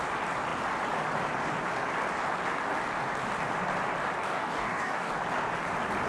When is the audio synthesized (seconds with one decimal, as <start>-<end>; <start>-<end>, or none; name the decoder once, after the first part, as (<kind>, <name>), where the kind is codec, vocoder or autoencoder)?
4.2-5.1 (codec, DAC)